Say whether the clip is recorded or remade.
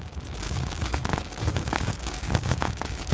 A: remade